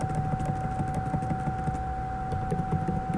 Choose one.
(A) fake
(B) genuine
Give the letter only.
B